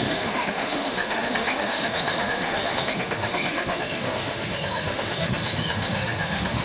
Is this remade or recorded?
remade